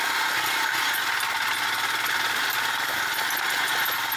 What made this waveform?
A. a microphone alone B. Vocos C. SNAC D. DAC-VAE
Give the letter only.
A